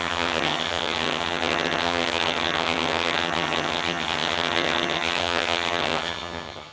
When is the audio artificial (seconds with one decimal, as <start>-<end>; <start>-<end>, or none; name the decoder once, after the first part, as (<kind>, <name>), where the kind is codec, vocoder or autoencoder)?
0.0-6.7 (vocoder, HiFi-GAN)